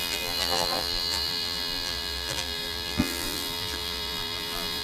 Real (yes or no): no